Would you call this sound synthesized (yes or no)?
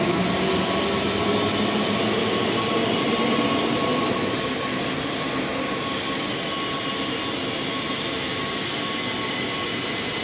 no